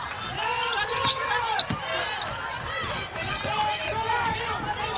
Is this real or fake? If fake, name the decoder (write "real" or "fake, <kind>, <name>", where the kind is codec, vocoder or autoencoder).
real